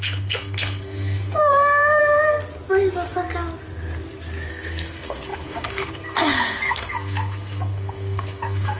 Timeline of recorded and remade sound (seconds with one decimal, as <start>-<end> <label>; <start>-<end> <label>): 0.0-2.0 remade; 2.0-4.5 recorded; 4.5-8.8 remade